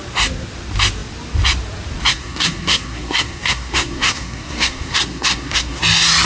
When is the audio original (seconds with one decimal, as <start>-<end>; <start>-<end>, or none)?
0.0-2.1; 5.8-6.2